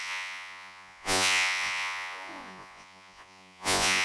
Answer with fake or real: fake